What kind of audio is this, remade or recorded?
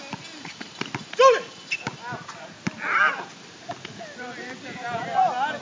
recorded